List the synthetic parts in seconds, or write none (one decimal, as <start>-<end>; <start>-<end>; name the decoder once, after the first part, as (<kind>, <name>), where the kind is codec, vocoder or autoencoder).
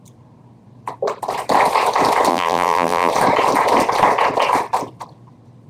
2.3-3.1 (vocoder, BigVGAN v2)